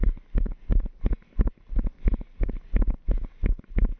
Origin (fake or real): real